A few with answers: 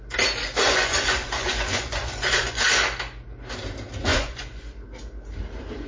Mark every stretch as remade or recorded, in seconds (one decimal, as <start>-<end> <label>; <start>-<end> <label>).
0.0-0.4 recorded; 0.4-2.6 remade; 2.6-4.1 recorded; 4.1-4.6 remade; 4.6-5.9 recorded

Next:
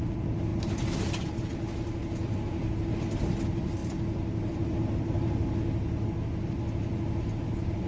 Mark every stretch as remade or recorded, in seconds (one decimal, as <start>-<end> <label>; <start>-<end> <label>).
0.0-2.2 recorded; 2.2-2.8 remade; 2.8-7.9 recorded

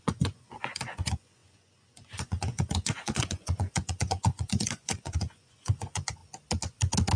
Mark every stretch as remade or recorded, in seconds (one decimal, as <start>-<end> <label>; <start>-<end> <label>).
0.0-6.2 remade; 6.2-7.2 recorded

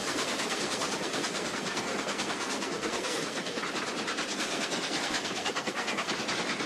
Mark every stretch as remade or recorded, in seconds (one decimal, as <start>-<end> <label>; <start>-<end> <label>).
0.0-3.6 remade; 3.6-4.3 recorded; 4.3-6.1 remade; 6.1-6.7 recorded

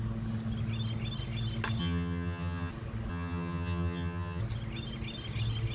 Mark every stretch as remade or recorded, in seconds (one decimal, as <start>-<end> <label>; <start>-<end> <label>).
0.0-1.8 recorded; 1.8-2.7 remade; 2.7-3.1 recorded; 3.1-4.4 remade; 4.4-5.7 recorded